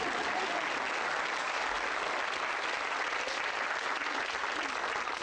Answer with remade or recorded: recorded